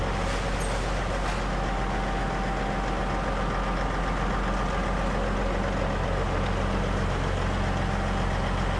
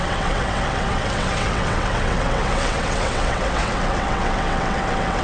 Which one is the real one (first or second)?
first